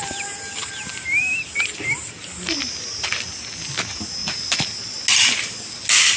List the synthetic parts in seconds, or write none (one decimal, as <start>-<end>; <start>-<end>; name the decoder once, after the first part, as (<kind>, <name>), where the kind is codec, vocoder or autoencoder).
none